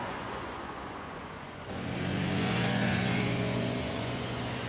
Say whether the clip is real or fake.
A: fake